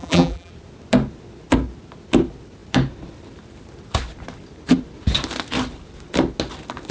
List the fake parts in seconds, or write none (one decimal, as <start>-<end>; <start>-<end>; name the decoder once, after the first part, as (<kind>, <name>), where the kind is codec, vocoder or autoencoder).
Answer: 0.0-0.5 (vocoder, BigVGAN v2)